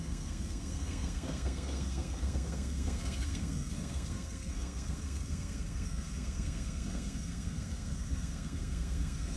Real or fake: fake